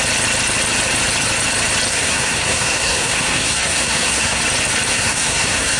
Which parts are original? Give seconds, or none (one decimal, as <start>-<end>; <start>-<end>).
0.0-1.9; 4.4-4.9